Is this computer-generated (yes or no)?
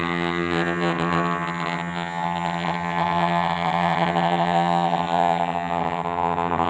yes